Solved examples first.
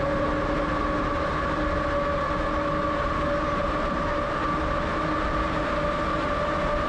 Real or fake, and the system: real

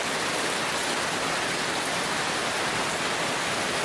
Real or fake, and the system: real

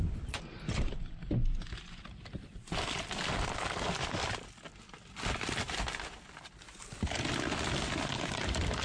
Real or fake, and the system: real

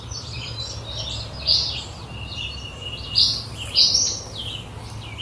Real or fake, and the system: real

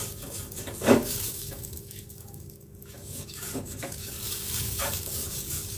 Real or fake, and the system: fake, codec, DAC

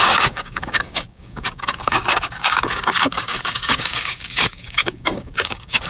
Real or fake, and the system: fake, codec, DAC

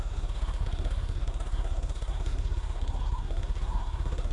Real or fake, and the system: fake, codec, SNAC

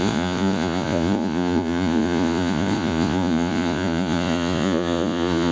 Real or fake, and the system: fake, vocoder, Vocos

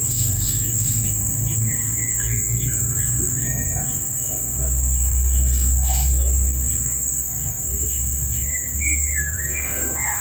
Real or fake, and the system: fake, codec, SNAC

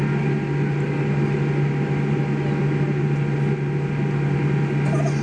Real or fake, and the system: real